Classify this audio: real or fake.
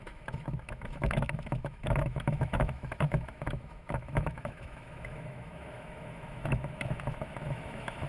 fake